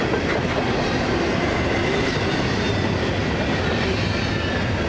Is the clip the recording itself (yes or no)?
yes